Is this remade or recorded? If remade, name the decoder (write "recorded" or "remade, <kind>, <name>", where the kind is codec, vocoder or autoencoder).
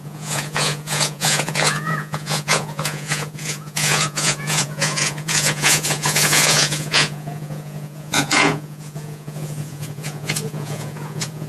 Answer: remade, vocoder, Vocos